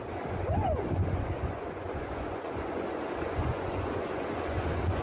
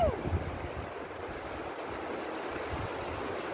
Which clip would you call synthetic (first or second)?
first